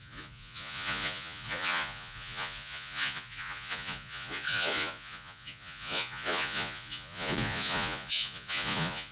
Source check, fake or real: fake